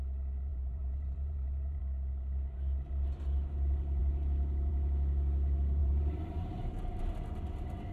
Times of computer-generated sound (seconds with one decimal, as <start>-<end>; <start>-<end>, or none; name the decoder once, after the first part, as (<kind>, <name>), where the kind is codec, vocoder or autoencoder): 0.5-1.8 (vocoder, BigVGAN v2); 5.8-7.0